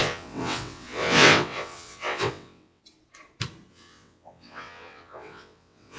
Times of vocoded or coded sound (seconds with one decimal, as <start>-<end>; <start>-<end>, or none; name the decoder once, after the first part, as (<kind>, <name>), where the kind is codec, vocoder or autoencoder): 0.0-2.8 (vocoder, WaveNeXt); 3.7-6.0

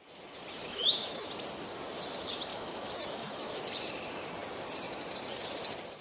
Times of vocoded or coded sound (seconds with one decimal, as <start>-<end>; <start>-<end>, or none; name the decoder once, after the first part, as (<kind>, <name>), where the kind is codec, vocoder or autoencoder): 0.7-1.3 (autoencoder, DAC-VAE); 2.5-3.6

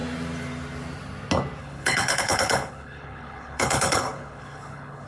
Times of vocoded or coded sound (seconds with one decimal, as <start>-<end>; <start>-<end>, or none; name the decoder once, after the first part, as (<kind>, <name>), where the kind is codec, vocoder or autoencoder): 1.6-5.1 (codec, HILCodec)

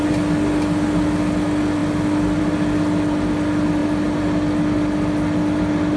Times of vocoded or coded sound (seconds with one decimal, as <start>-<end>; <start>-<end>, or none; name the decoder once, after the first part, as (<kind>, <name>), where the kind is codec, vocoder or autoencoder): none

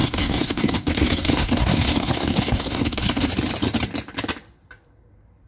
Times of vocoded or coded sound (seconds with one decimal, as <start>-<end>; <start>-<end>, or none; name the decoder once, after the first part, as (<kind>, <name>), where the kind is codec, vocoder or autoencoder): 0.0-3.3 (codec, SNAC)

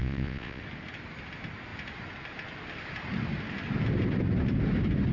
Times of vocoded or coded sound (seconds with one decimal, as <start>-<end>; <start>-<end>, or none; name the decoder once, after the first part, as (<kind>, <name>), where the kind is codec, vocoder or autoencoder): 0.0-0.6 (vocoder, Vocos)